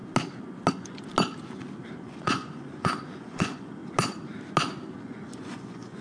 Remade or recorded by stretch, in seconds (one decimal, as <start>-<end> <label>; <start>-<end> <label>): 0.0-0.7 recorded; 0.7-1.1 remade; 1.1-2.0 recorded; 2.0-3.8 remade; 3.8-5.0 recorded; 5.0-6.0 remade